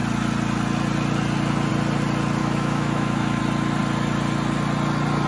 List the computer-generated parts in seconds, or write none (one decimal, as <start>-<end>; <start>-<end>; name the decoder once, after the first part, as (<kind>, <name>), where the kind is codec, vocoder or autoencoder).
2.4-3.4 (autoencoder, DAC-VAE)